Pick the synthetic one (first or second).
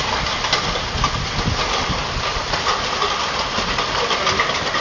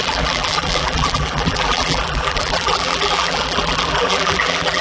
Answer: second